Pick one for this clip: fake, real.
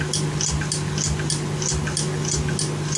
real